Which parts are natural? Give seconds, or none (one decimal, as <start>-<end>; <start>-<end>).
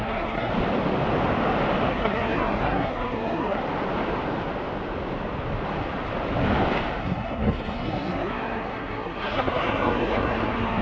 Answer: 0.5-1.9; 3.6-7.0